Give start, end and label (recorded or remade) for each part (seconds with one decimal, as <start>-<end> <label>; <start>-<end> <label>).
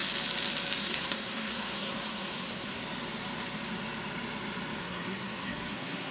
0.0-0.8 recorded; 0.8-2.8 remade; 2.8-4.8 recorded; 4.8-6.1 remade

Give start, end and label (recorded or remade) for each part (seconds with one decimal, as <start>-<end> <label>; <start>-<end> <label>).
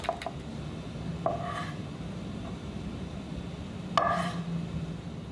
0.0-0.5 recorded; 0.5-1.1 remade; 1.1-1.6 recorded; 1.6-3.6 remade; 3.6-5.3 recorded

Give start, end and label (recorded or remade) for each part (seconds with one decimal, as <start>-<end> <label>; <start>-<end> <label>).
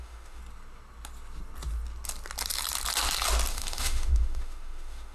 0.0-0.4 remade; 0.4-3.5 recorded; 3.5-5.1 remade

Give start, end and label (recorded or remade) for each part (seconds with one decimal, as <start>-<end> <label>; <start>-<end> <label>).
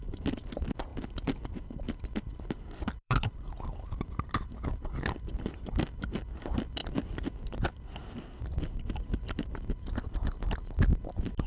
0.0-6.8 remade; 6.8-8.4 recorded; 8.4-11.5 remade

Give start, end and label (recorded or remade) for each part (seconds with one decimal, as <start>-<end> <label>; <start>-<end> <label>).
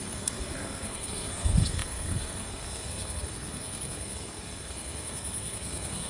0.0-6.1 remade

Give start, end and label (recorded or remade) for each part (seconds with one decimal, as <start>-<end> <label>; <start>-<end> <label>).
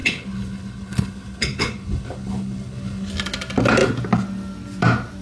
0.0-3.1 remade; 3.1-5.2 recorded